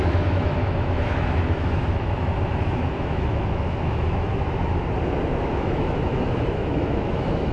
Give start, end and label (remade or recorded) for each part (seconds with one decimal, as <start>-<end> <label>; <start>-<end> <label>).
0.0-4.8 remade; 4.8-5.4 recorded; 5.4-7.5 remade